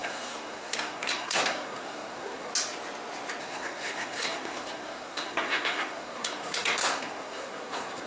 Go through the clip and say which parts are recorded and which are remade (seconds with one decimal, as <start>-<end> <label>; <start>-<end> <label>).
0.0-2.5 remade; 2.5-3.4 recorded; 3.4-8.1 remade